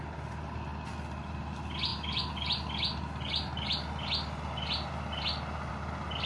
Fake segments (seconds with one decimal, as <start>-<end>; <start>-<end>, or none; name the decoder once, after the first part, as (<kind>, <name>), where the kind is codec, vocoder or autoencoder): none